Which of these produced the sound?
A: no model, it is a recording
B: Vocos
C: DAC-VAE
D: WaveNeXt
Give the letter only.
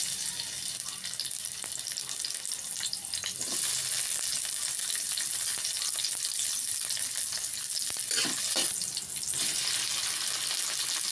A